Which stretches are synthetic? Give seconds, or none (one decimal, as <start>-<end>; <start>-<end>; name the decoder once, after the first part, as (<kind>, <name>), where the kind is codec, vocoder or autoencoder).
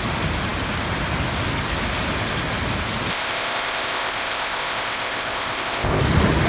3.1-6.0 (codec, ZipCodec)